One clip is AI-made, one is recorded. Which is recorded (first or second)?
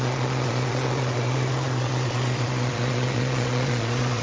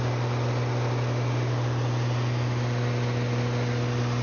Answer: second